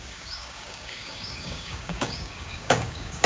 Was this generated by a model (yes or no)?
yes